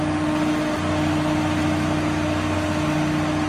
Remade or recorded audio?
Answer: recorded